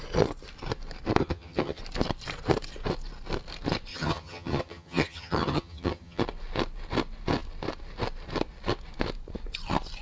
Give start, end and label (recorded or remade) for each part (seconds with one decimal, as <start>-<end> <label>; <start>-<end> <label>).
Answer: 0.0-1.2 recorded; 1.2-1.8 remade; 1.8-3.9 recorded; 3.9-6.2 remade; 6.2-10.0 recorded